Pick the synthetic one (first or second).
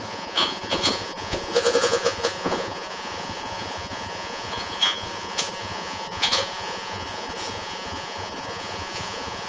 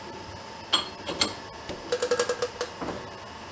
first